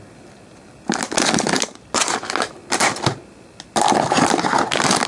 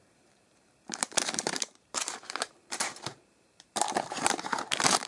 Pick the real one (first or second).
first